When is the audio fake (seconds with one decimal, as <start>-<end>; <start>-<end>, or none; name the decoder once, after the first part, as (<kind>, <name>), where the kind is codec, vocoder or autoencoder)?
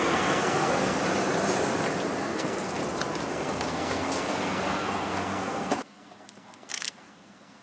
0.0-1.0 (codec, SNAC); 2.2-2.8; 3.3-7.6